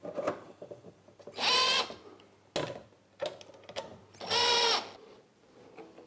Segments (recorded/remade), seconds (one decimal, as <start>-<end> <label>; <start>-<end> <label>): 0.0-6.1 recorded